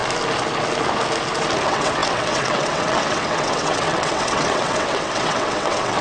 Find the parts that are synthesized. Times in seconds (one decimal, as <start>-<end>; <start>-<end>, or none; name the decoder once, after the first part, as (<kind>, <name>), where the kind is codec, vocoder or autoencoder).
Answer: 1.6-6.0 (vocoder, WaveNeXt)